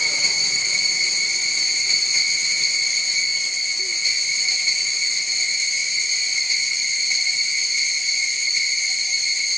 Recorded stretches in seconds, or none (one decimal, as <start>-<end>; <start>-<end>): 0.0-2.1; 2.7-9.6